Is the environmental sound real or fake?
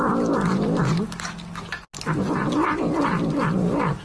real